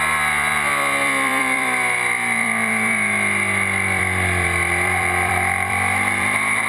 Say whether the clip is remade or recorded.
remade